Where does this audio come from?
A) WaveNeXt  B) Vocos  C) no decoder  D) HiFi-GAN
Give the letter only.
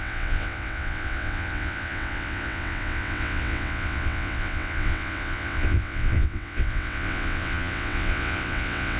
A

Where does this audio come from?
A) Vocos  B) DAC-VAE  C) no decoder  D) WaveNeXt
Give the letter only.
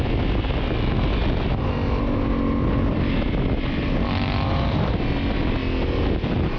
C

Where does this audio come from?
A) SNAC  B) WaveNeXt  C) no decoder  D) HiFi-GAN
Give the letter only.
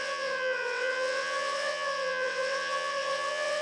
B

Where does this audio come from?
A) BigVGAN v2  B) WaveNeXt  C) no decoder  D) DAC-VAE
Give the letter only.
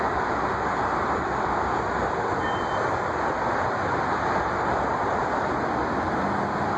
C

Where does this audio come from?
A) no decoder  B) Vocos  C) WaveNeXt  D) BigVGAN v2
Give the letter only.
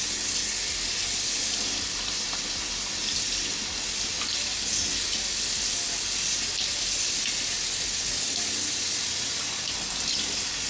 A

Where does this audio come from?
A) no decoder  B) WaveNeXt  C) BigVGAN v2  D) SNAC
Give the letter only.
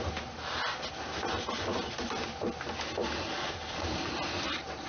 A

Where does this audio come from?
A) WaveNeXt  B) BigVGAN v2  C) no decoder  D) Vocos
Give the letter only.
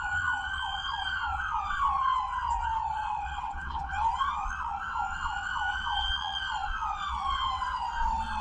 A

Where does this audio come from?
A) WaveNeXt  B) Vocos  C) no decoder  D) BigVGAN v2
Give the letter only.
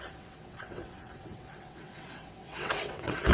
A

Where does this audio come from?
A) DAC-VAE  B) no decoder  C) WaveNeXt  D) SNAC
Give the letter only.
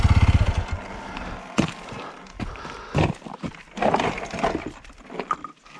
B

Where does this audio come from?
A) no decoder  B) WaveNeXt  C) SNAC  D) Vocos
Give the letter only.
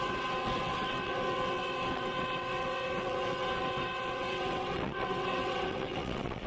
B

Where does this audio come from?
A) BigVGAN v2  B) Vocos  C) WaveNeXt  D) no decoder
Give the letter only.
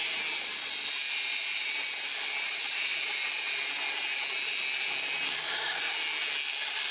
D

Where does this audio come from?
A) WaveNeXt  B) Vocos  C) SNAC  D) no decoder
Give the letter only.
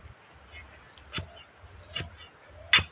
D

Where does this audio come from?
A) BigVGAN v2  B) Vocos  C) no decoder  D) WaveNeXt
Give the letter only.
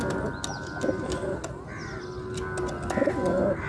C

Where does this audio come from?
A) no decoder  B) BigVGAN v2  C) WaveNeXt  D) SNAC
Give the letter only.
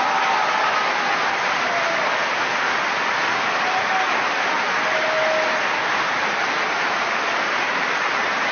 A